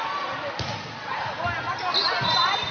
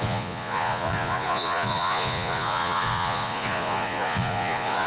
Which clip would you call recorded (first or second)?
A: first